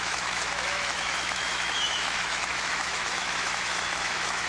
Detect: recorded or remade remade